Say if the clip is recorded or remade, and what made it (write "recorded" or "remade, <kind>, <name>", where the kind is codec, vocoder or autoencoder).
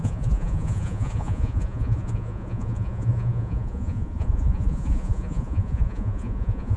remade, vocoder, Vocos